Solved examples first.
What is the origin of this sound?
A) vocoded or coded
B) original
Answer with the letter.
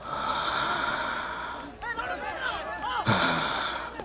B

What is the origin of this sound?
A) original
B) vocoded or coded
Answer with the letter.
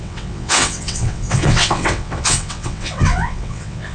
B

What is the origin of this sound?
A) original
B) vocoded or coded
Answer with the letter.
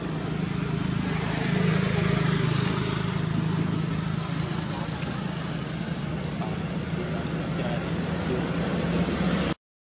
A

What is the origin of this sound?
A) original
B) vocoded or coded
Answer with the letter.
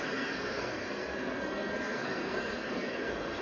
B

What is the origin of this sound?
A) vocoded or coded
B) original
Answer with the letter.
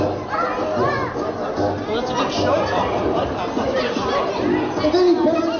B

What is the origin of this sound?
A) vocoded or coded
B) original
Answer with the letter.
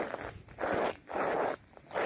B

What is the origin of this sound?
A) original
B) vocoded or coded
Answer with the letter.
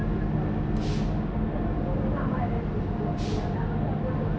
A